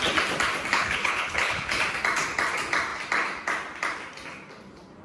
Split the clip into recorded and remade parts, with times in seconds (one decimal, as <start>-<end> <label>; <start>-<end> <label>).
0.0-0.7 recorded; 0.7-1.8 remade; 1.8-5.0 recorded